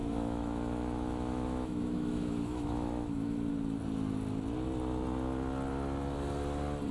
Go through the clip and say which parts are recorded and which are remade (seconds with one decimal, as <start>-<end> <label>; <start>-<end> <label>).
0.0-3.5 remade; 3.5-6.9 recorded